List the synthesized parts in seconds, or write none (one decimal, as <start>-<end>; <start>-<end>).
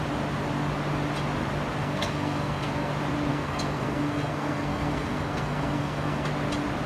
1.8-2.9; 3.3-6.3